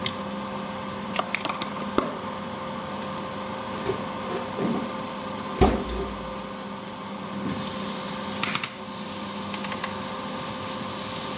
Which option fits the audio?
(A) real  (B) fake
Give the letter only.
B